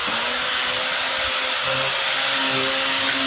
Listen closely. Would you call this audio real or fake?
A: real